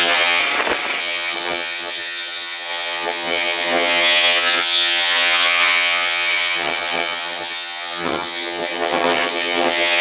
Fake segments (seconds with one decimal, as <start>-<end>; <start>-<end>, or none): 0.0-0.4; 1.0-10.0